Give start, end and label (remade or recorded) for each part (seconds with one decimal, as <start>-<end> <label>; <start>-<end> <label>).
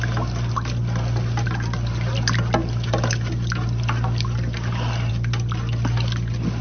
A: 0.0-6.6 recorded